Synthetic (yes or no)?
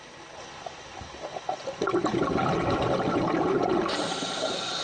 no